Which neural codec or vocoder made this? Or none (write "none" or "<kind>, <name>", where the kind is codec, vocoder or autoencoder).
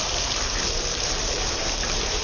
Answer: vocoder, BigVGAN v2